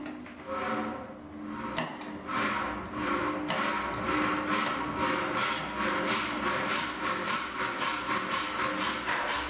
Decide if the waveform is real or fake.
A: real